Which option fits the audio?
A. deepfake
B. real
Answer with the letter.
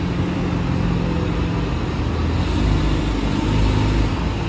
B